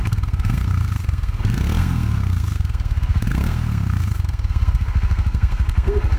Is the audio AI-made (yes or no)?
yes